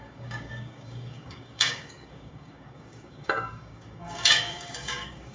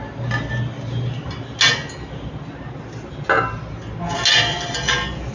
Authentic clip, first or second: second